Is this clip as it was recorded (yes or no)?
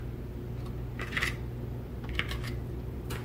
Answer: yes